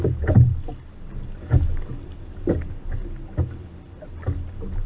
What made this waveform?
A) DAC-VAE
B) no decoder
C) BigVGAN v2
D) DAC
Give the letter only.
B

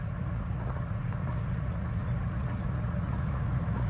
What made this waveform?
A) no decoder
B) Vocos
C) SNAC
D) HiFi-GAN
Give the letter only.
B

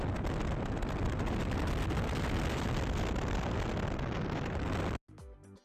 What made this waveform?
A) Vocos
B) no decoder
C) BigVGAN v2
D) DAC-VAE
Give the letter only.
B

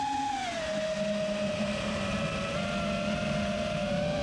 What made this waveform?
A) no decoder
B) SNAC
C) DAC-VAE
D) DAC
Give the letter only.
A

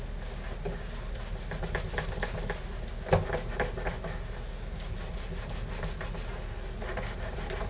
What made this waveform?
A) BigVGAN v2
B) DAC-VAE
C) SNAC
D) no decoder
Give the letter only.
D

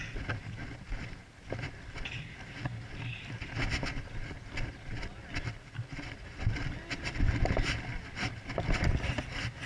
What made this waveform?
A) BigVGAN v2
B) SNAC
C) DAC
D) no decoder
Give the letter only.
D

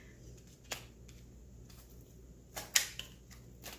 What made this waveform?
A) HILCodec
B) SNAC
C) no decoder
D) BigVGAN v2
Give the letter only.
C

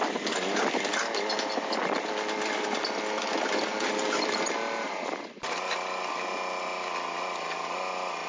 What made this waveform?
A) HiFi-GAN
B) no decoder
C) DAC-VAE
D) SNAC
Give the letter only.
B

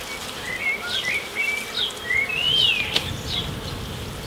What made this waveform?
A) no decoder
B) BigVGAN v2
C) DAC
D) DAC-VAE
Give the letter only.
A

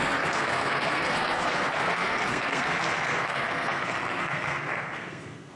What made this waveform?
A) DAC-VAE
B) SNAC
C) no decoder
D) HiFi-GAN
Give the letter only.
B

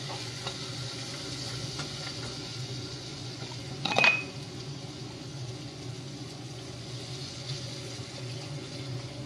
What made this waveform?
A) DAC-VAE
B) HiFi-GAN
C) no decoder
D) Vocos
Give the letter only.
D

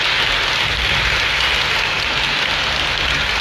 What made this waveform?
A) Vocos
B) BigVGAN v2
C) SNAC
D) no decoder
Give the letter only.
D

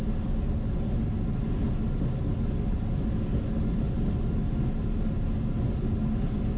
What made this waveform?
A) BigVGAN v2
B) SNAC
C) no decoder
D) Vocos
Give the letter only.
C